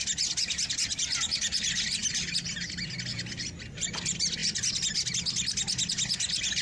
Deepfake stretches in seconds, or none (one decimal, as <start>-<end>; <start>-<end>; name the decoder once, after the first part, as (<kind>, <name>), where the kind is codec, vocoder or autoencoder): none